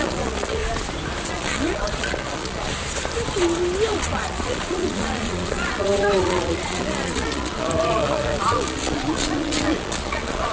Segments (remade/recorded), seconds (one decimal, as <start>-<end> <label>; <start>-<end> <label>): 0.0-0.6 remade; 0.6-1.3 recorded; 1.3-2.7 remade; 2.7-3.9 recorded; 3.9-10.5 remade